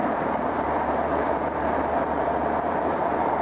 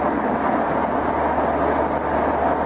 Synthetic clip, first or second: first